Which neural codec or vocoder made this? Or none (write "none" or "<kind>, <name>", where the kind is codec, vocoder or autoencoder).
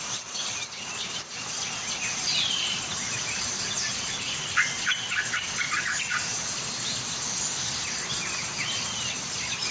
none